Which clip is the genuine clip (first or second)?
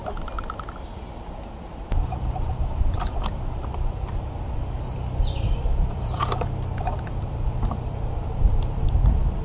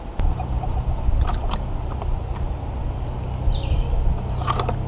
second